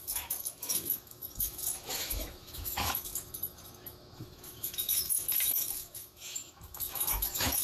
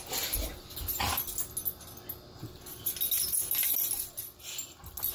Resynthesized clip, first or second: first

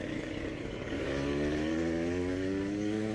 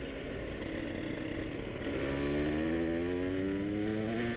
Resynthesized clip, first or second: first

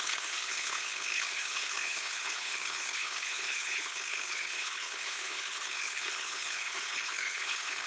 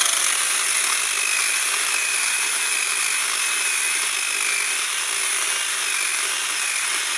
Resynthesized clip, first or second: first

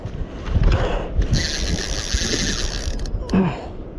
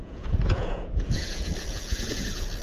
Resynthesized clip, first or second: second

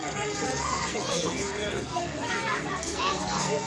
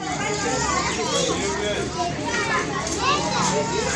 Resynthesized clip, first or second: first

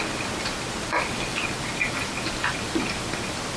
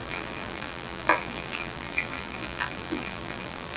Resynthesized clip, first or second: second